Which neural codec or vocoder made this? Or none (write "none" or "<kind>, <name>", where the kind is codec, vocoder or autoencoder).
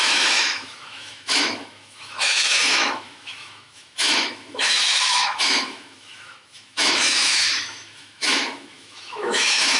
autoencoder, DAC-VAE